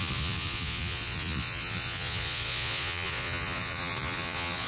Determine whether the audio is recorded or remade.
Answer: remade